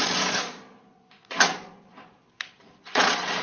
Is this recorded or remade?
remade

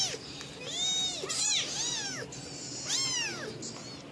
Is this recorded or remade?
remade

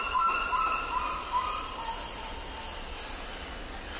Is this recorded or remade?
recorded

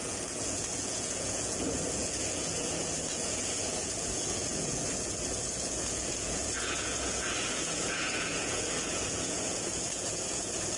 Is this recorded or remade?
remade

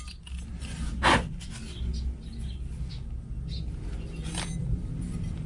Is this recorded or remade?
recorded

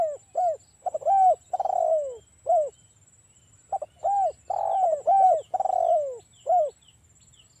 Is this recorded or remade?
recorded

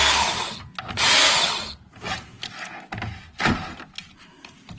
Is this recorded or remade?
recorded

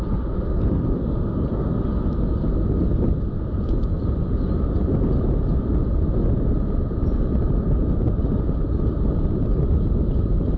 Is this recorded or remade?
recorded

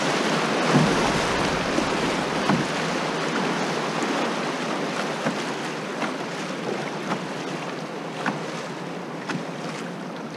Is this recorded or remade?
recorded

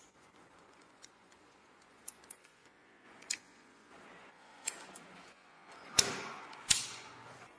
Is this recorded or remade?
remade